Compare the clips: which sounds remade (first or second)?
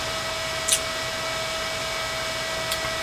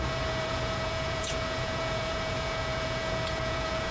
second